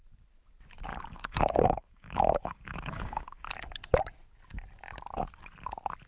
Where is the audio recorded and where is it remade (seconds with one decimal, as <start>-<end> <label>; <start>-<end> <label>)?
0.0-0.9 recorded; 0.9-3.4 remade; 3.4-6.1 recorded